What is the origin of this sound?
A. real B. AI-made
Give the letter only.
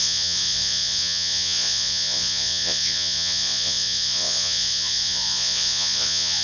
B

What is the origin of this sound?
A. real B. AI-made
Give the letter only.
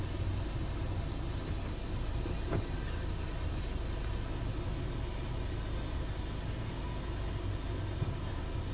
A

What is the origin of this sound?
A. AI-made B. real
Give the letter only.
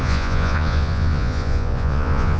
A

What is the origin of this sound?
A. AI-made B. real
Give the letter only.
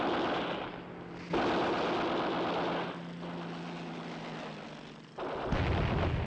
B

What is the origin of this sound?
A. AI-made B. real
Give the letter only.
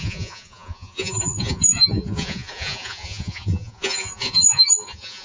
A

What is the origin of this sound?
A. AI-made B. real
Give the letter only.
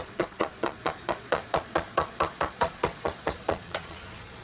A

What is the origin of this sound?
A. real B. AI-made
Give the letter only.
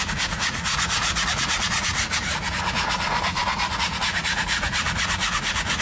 B